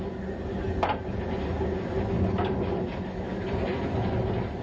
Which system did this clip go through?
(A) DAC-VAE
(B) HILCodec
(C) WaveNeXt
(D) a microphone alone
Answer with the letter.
D